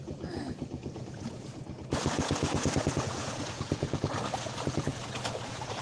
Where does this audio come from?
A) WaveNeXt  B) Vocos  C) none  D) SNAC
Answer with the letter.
B